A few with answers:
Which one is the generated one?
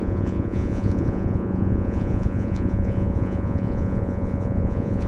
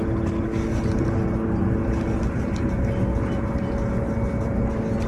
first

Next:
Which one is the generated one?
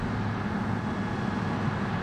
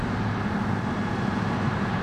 second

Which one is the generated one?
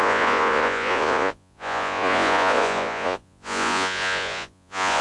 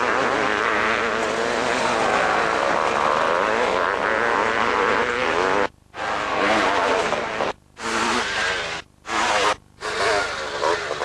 first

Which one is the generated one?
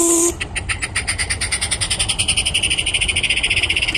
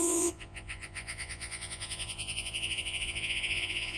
second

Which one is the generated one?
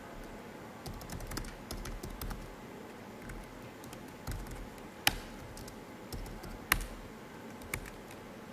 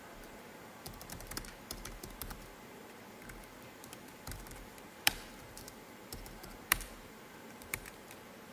second